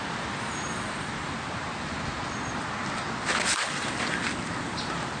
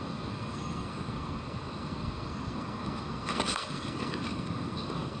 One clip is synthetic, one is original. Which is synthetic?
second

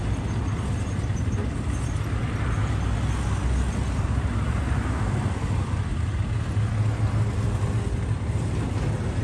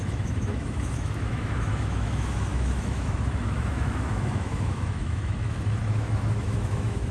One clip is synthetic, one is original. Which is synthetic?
second